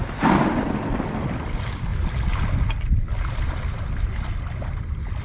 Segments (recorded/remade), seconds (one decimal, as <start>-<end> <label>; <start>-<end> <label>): 0.0-5.2 recorded